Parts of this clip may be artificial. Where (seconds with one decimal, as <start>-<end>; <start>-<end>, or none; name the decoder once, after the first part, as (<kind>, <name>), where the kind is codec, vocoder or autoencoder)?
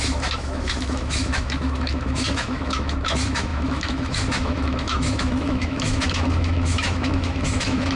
0.0-8.0 (autoencoder, DAC-VAE)